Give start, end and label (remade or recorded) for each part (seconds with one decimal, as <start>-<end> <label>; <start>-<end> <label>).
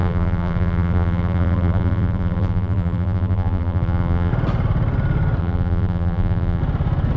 0.0-4.3 remade; 4.3-5.4 recorded; 5.4-6.6 remade; 6.6-7.2 recorded